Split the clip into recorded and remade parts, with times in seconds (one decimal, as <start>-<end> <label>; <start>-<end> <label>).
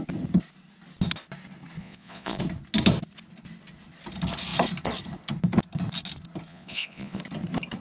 0.0-1.8 recorded; 1.8-2.4 remade; 2.4-6.5 recorded; 6.5-7.2 remade; 7.2-7.8 recorded